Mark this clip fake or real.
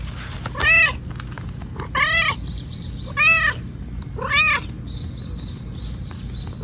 real